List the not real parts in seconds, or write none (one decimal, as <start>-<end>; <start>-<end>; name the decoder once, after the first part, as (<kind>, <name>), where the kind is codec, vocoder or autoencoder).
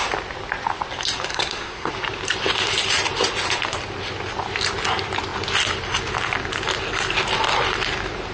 1.3-1.9 (codec, SNAC)